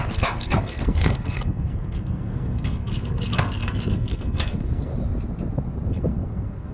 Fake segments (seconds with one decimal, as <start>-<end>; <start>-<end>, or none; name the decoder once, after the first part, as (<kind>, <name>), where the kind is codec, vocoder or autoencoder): 0.0-4.9 (codec, SNAC); 5.9-6.7

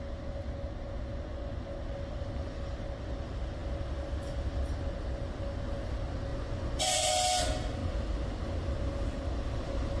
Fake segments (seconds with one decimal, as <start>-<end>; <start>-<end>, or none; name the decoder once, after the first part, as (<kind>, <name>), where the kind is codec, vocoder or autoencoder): 1.1-1.6 (vocoder, Vocos); 6.3-7.1

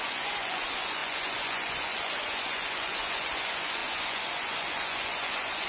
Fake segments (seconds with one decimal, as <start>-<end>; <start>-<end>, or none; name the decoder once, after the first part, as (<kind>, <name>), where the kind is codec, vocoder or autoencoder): 0.0-5.7 (vocoder, Vocos)